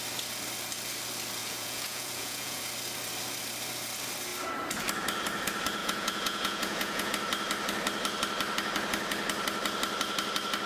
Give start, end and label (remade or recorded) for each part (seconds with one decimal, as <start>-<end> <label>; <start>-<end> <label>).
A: 0.0-1.4 recorded; 1.4-2.6 remade; 2.6-5.8 recorded; 5.8-7.1 remade; 7.1-10.7 recorded